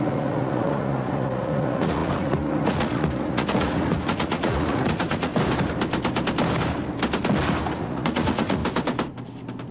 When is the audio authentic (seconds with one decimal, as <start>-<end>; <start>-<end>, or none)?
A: 5.3-7.7; 8.6-9.7